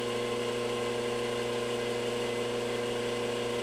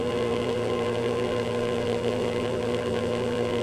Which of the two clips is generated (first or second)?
second